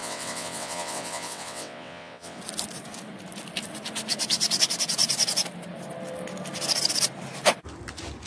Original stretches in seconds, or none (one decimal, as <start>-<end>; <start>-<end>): 2.4-8.3